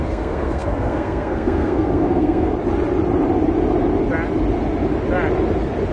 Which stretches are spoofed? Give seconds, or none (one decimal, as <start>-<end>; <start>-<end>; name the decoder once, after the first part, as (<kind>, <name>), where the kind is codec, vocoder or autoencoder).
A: 0.0-2.5 (codec, SNAC)